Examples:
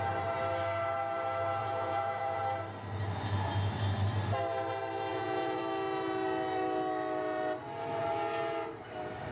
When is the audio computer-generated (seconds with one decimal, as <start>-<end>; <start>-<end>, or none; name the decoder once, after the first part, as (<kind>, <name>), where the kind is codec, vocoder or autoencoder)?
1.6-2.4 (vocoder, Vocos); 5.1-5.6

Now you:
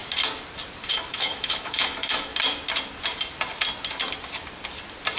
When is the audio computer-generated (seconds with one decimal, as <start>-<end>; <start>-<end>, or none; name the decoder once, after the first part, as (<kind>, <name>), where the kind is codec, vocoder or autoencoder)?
0.9-2.3 (autoencoder, DAC-VAE)

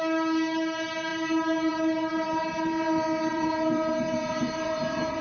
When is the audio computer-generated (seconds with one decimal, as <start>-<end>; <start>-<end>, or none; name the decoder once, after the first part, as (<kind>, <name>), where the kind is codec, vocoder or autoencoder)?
3.3-5.2 (vocoder, Vocos)